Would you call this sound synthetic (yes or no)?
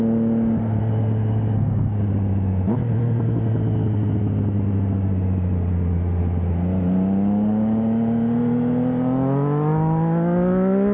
no